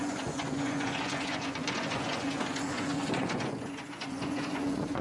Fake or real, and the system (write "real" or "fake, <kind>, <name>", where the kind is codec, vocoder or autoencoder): fake, vocoder, Vocos